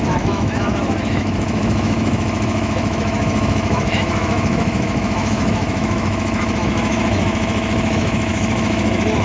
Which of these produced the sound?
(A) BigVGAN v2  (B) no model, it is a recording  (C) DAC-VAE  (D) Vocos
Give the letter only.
C